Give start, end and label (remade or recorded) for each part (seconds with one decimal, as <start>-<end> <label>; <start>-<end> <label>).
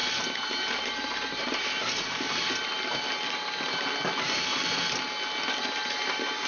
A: 0.0-1.6 remade; 1.6-6.5 recorded